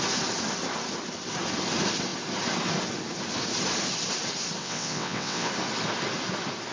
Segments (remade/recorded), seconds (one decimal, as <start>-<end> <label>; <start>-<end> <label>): 0.0-4.6 recorded; 4.6-5.5 remade; 5.5-6.7 recorded